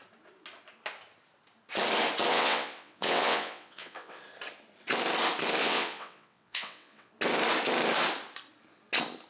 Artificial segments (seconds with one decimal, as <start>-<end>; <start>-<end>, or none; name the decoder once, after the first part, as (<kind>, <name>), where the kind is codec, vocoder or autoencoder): 2.3-4.2 (vocoder, WaveNeXt); 5.6-7.1